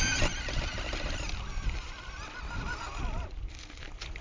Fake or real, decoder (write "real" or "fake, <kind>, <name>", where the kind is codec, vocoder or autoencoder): real